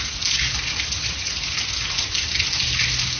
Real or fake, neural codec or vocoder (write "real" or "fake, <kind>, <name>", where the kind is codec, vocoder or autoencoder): real